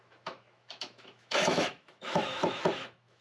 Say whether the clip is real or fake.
fake